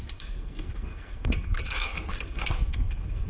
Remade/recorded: remade